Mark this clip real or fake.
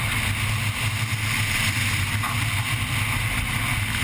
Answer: real